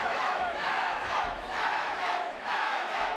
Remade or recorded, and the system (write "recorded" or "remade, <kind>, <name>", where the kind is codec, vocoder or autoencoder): remade, autoencoder, DAC-VAE